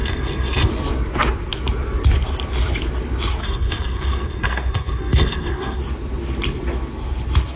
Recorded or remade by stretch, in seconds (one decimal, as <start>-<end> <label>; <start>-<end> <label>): 0.0-0.7 remade; 0.7-3.4 recorded; 3.4-5.8 remade; 5.8-7.6 recorded